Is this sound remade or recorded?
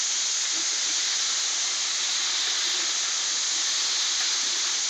recorded